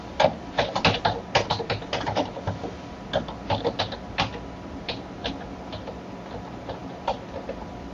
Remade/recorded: recorded